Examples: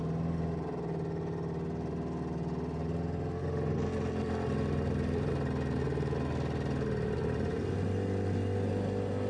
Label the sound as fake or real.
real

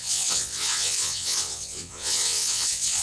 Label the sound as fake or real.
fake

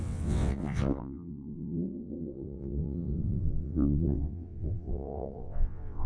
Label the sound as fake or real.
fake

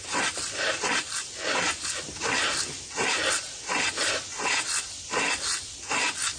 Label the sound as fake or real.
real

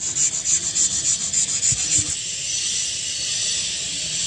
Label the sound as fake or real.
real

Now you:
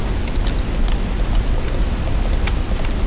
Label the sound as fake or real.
real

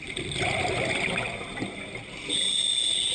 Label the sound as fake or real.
real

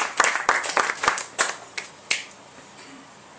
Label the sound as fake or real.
real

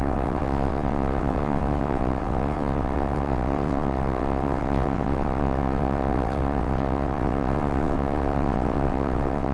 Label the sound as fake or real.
fake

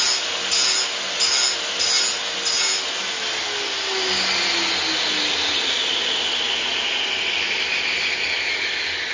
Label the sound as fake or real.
real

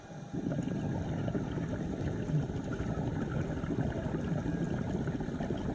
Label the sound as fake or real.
real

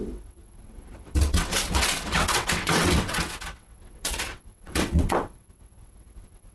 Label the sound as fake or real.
fake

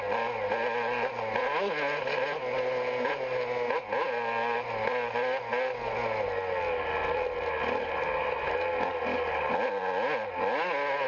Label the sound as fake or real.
real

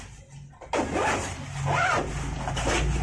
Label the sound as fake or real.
real